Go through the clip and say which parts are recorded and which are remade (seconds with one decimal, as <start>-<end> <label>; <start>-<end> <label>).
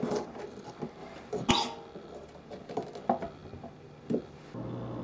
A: 0.0-5.0 recorded